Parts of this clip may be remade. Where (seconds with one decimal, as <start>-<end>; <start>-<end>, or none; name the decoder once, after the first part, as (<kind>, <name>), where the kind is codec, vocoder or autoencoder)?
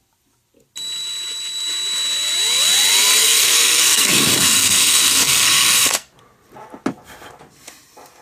3.2-6.1 (codec, SNAC)